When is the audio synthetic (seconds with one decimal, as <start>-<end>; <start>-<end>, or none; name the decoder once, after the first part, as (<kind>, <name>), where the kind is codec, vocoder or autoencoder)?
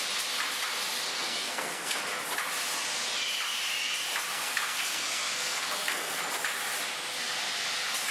1.1-2.0 (codec, SNAC); 4.3-6.2